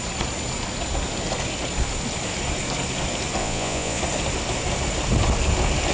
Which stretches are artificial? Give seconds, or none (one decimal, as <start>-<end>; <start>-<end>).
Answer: 3.4-4.0